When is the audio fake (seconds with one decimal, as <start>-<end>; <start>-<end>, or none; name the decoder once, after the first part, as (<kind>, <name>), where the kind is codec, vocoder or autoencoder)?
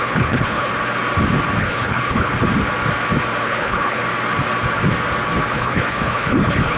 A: 0.0-0.7 (codec, HILCodec); 1.6-2.3; 3.4-4.0; 5.5-6.8